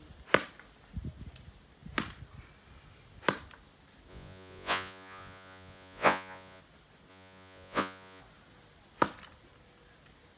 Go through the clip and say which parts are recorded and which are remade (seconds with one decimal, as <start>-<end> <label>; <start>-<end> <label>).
0.0-4.1 recorded; 4.1-6.6 remade; 6.6-7.1 recorded; 7.1-8.2 remade; 8.2-10.4 recorded